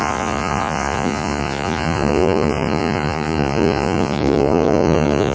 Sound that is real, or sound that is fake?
fake